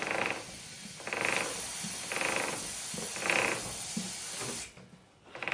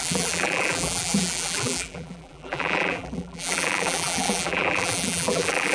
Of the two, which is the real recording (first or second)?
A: first